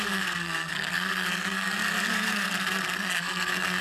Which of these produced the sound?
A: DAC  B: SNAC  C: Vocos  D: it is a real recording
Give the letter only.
B